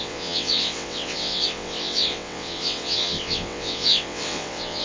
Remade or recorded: remade